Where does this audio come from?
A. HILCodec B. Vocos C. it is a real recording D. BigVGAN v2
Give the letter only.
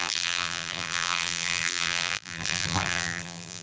D